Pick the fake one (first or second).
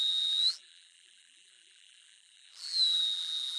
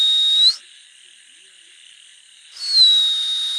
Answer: first